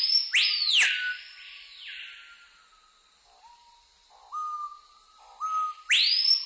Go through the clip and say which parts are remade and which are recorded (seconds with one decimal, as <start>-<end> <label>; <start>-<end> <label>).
0.0-6.5 recorded